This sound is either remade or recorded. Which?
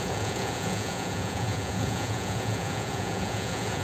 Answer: remade